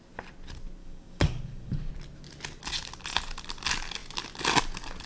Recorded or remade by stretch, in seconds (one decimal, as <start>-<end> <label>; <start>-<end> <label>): 0.0-0.8 recorded; 0.8-1.9 remade; 1.9-5.1 recorded